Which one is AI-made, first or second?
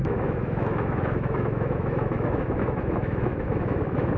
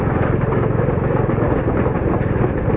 first